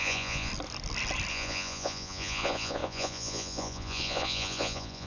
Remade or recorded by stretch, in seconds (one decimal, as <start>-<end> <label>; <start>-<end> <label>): 0.0-0.5 remade; 0.5-1.3 recorded; 1.3-5.1 remade